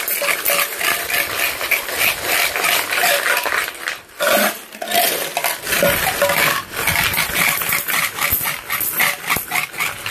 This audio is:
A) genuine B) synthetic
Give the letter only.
A